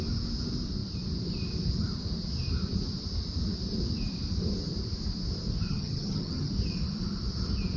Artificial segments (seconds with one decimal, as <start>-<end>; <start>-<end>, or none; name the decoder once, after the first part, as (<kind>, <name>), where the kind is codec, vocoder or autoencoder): 5.7-6.5 (vocoder, HiFi-GAN)